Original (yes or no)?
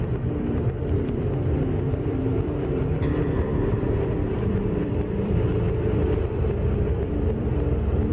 no